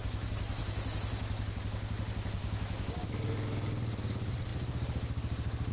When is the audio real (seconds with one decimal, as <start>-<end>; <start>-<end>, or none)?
0.0-0.6; 1.6-2.4; 3.1-5.7